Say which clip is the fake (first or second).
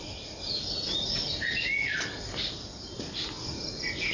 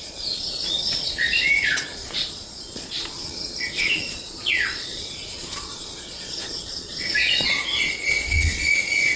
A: second